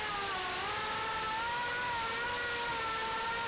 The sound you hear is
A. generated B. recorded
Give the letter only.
B